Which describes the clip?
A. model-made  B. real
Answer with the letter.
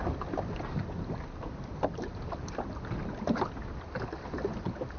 B